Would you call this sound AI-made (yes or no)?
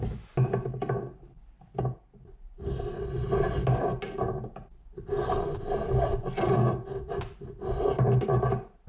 no